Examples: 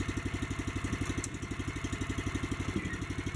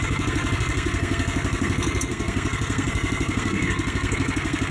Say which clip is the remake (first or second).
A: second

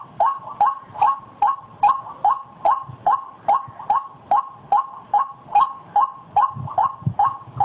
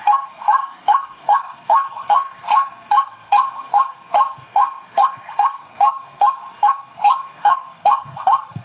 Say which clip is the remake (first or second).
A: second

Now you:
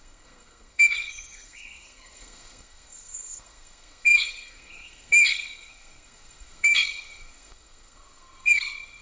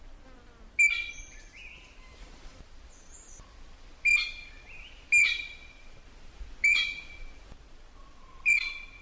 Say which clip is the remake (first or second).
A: first